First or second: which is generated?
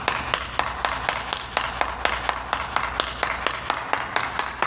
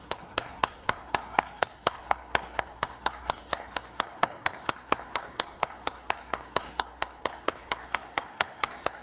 second